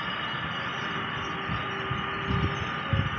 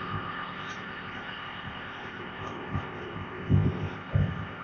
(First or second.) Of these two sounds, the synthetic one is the second